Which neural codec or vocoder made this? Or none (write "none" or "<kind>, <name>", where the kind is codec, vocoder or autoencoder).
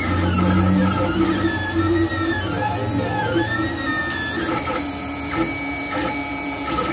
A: none